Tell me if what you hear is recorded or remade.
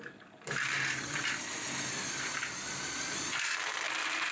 recorded